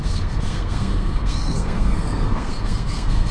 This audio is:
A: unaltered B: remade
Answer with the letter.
B